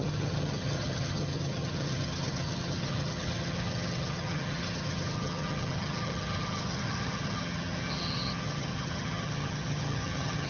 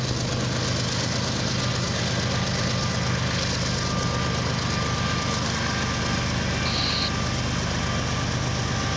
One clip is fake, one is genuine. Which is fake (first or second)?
first